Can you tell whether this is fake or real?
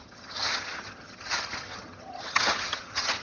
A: fake